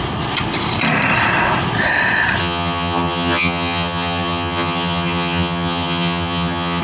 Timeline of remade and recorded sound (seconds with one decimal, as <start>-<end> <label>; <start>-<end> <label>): 0.0-2.4 recorded; 2.4-6.8 remade